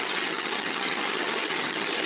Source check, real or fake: fake